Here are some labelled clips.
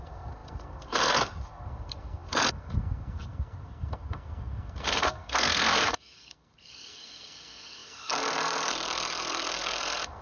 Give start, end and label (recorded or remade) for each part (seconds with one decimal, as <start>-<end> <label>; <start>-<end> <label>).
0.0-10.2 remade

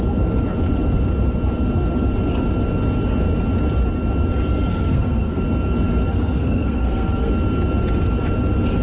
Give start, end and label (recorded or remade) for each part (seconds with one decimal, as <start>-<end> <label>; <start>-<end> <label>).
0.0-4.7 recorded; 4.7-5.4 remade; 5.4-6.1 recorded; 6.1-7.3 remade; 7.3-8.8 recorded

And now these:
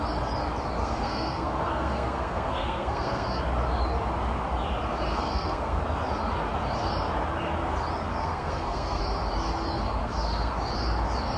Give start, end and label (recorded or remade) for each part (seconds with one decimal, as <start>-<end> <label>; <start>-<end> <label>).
0.0-0.8 recorded; 0.8-3.4 remade; 3.4-5.1 recorded; 5.1-5.8 remade; 5.8-8.1 recorded; 8.1-9.0 remade; 9.0-10.0 recorded; 10.0-10.5 remade; 10.5-11.4 recorded